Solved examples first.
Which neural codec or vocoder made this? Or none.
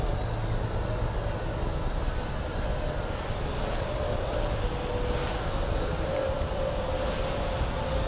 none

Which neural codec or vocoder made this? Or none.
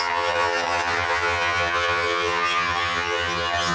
vocoder, HiFi-GAN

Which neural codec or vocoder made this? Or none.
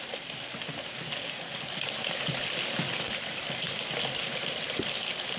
none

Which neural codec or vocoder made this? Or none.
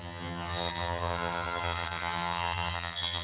vocoder, HiFi-GAN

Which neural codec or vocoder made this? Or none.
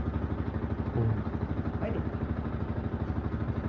none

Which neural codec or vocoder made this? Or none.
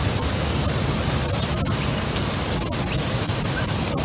none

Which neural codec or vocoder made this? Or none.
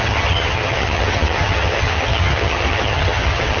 vocoder, HiFi-GAN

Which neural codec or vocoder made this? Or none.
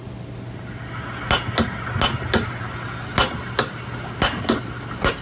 none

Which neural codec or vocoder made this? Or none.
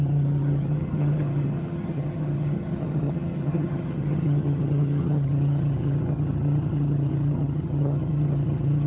vocoder, HiFi-GAN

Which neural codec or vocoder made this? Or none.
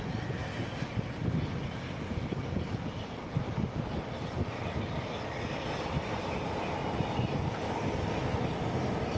none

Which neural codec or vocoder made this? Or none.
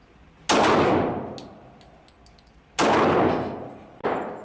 none